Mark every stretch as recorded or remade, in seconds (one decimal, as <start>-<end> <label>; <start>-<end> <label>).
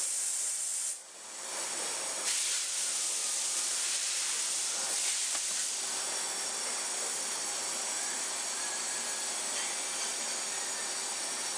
0.0-0.7 recorded; 0.7-2.7 remade; 2.7-3.2 recorded; 3.2-4.9 remade; 4.9-11.6 recorded